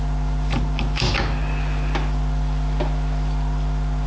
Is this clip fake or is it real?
real